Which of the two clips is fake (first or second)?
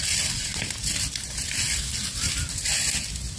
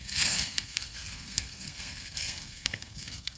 second